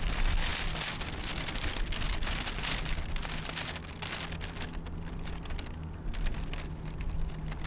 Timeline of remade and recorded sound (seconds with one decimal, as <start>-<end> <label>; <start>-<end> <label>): 0.0-7.7 recorded